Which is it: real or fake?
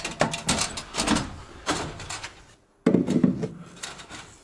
real